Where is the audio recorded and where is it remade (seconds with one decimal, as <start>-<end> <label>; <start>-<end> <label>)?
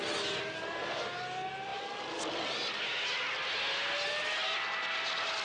0.0-5.4 recorded